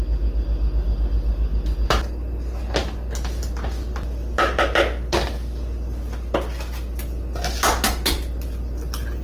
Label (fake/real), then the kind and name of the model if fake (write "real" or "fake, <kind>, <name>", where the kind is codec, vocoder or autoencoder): real